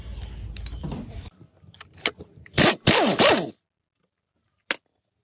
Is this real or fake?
real